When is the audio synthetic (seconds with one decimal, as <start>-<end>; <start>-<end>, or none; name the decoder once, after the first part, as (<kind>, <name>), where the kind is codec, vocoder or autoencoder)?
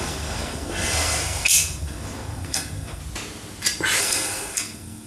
0.0-3.0 (codec, SNAC); 4.0-5.1